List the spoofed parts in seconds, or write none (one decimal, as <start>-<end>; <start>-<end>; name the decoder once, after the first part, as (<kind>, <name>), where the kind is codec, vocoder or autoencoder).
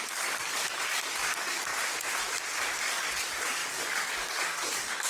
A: 0.0-1.7 (codec, DAC); 2.8-5.1